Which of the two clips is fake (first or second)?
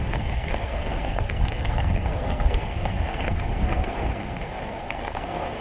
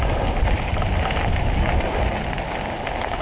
first